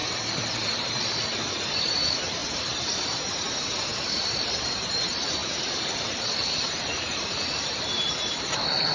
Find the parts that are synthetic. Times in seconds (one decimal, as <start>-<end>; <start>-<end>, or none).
0.7-2.4; 4.2-8.9